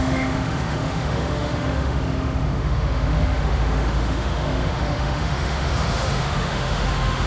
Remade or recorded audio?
remade